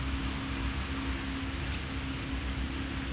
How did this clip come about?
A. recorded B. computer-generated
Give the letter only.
A